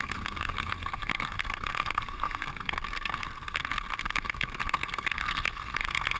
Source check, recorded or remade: remade